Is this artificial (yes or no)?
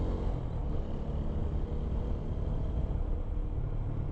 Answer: no